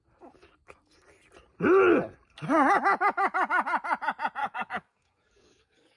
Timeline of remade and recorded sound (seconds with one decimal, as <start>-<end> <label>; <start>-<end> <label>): 0.0-4.4 recorded; 4.4-6.0 remade